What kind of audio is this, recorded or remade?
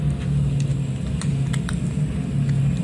recorded